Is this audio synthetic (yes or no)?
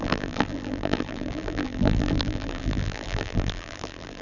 yes